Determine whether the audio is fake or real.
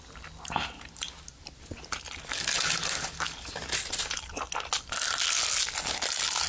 real